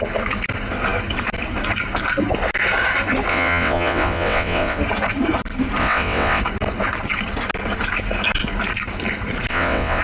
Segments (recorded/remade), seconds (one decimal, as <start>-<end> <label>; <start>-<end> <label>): 0.0-3.3 recorded; 3.3-4.8 remade; 4.8-5.8 recorded; 5.8-6.4 remade; 6.4-9.5 recorded; 9.5-10.0 remade